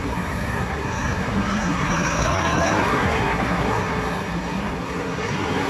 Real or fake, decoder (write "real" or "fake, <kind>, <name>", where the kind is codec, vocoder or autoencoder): fake, codec, SNAC